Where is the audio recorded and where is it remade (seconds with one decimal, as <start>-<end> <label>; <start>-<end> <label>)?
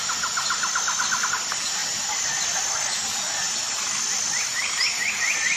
0.0-5.6 recorded